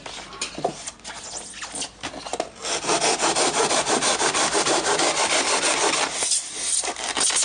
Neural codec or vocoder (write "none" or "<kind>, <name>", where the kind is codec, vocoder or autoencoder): none